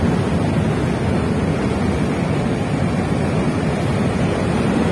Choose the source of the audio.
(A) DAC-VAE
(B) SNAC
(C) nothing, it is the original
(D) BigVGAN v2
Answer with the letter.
C